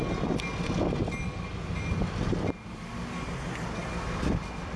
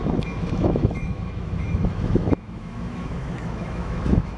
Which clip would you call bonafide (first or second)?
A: first